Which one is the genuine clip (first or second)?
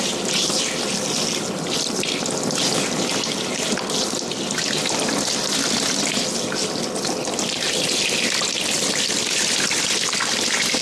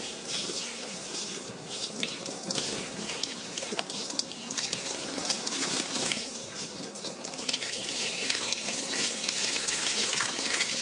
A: first